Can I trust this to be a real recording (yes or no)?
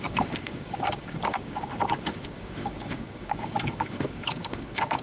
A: no